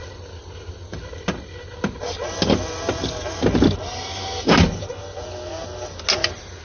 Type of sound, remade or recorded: recorded